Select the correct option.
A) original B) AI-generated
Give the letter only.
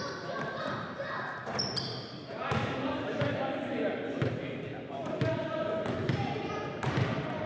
A